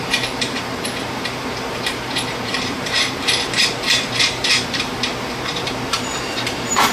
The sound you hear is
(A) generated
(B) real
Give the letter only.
A